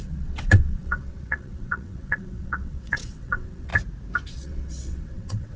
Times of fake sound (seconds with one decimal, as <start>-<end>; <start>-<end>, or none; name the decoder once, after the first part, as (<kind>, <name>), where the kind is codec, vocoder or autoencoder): 0.0-3.7 (vocoder, WaveNeXt); 4.3-5.6